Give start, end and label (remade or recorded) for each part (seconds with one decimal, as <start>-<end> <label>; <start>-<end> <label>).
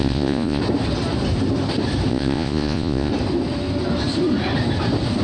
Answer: 0.0-0.6 remade; 0.6-2.1 recorded; 2.1-3.1 remade; 3.1-5.2 recorded